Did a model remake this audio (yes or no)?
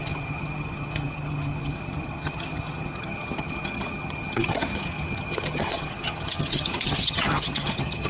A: yes